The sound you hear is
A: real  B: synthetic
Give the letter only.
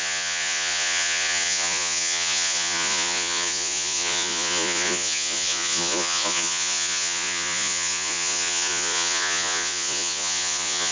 B